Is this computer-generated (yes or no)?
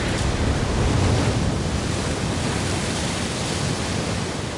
yes